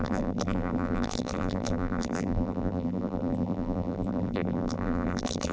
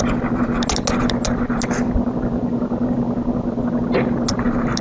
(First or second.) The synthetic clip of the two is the first